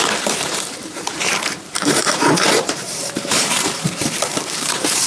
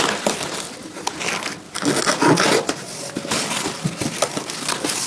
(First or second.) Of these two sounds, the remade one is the first